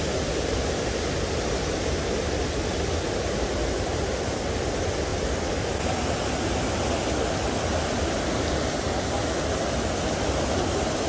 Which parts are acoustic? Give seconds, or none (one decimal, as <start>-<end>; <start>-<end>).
0.0-11.1